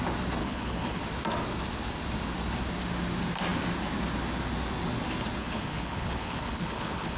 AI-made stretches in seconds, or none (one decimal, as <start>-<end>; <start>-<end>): 0.4-1.0; 5.4-7.2